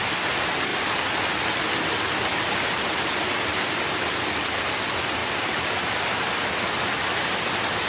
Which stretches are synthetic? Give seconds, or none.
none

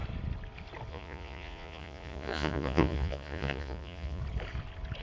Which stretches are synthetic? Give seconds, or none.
0.9-4.2